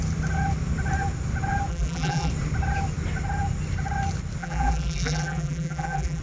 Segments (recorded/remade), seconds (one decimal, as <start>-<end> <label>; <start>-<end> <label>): 0.0-1.7 recorded; 1.7-2.3 remade; 2.3-4.4 recorded; 4.4-6.2 remade